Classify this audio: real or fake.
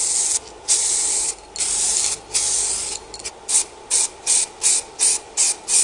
real